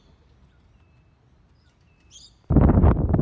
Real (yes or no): yes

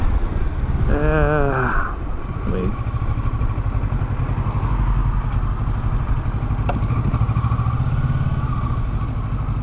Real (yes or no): yes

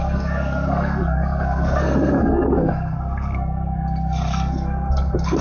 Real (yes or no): no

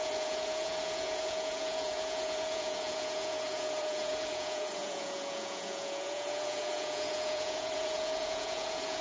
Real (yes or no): no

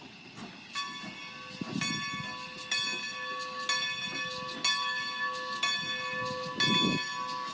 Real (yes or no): yes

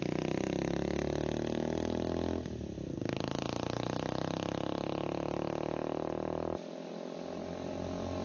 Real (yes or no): yes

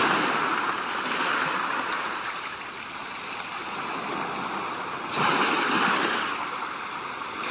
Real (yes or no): yes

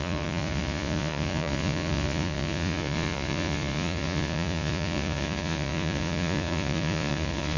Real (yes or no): no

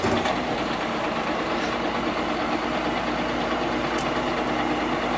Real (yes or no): yes